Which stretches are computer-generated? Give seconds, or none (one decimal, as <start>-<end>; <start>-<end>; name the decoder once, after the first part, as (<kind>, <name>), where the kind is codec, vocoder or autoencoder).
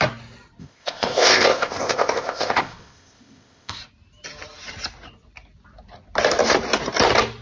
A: 0.6-3.8 (codec, ZipCodec)